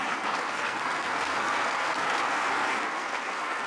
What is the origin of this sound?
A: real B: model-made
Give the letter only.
B